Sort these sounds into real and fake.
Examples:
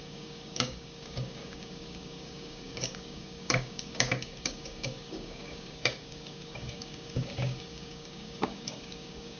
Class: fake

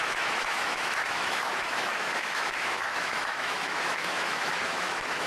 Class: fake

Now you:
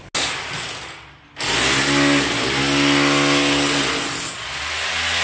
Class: real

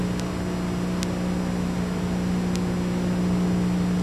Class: real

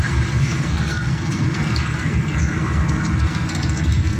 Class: fake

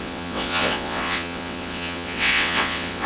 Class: fake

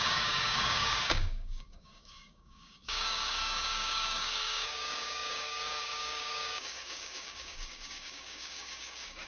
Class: fake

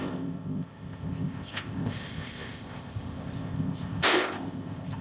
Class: fake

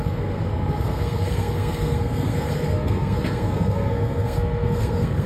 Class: fake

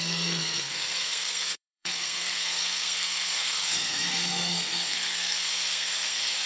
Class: fake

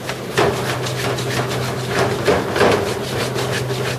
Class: real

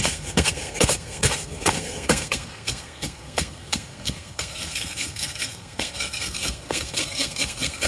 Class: fake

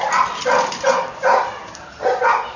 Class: real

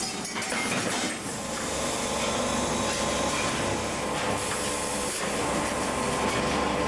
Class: real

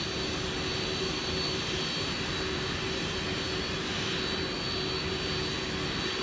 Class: real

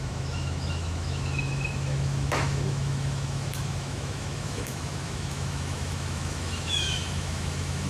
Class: fake